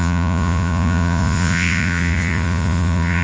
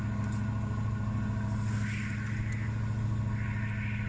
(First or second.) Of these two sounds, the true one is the second